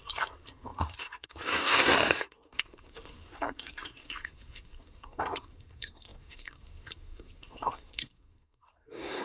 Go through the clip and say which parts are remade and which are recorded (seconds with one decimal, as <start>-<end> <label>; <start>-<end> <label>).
0.0-9.2 remade